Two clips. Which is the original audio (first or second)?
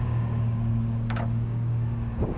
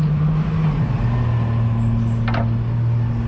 second